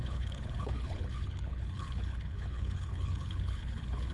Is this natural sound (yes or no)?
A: no